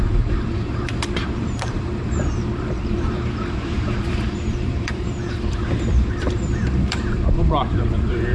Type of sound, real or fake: fake